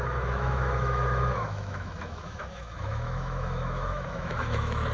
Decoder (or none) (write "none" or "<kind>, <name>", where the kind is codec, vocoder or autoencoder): autoencoder, DAC-VAE